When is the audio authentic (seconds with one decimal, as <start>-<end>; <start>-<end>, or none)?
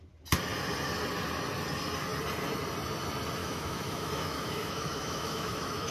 0.0-3.4